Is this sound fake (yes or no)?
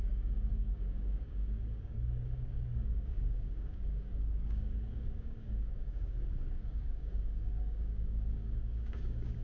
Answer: yes